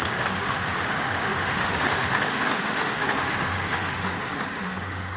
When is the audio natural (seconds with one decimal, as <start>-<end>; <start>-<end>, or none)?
none